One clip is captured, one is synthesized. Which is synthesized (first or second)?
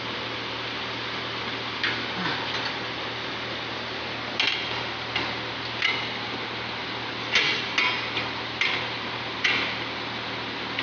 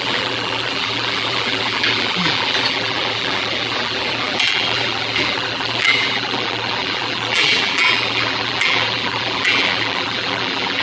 second